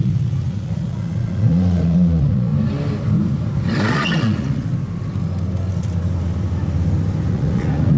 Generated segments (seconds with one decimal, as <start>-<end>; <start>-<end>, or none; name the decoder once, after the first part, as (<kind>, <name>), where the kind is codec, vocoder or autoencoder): 0.0-2.5 (vocoder, Vocos); 3.8-4.7; 7.3-8.0